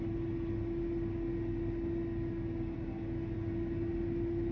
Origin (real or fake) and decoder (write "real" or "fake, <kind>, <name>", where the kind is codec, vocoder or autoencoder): real